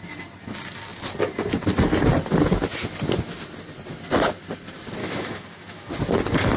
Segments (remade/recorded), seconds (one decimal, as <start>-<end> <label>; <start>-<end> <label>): 0.0-5.0 recorded; 5.0-5.9 remade; 5.9-6.6 recorded